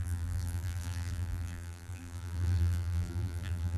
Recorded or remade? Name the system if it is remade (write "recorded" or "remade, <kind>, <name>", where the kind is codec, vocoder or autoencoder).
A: remade, vocoder, BigVGAN v2